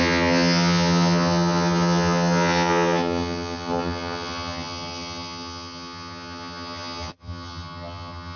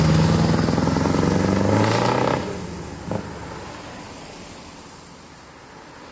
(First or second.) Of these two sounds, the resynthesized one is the first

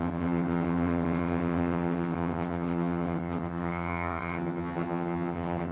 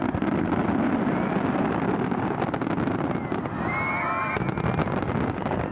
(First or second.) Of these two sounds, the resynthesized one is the first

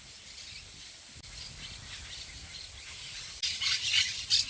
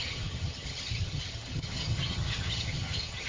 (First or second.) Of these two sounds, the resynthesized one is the second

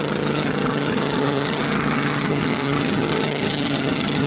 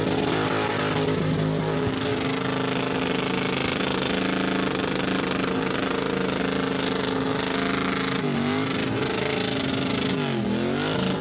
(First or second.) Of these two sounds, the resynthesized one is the first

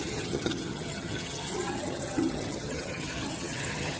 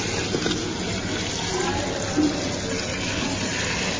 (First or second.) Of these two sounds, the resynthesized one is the first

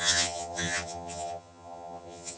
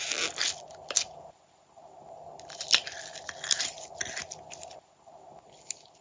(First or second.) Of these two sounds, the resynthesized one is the first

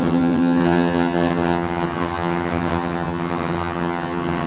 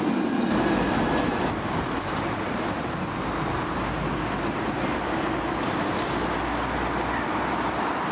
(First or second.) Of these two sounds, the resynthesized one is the first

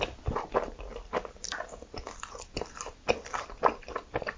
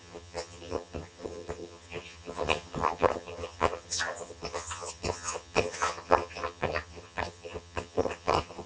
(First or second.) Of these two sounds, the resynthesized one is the second